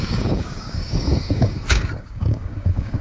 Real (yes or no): no